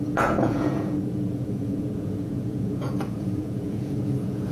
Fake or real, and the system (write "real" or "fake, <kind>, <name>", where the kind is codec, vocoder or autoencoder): fake, vocoder, Vocos